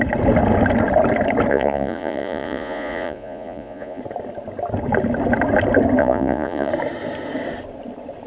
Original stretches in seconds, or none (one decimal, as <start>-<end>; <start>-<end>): 0.0-1.5; 4.0-6.0; 6.7-8.3